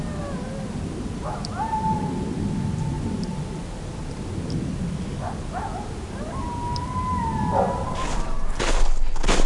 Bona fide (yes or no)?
yes